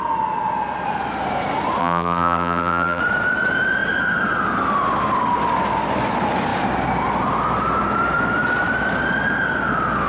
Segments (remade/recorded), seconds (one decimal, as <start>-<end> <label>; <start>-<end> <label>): 0.0-1.8 recorded; 1.8-3.0 remade; 3.0-10.1 recorded